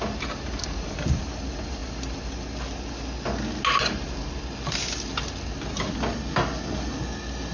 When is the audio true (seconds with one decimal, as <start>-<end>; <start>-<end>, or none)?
0.0-7.5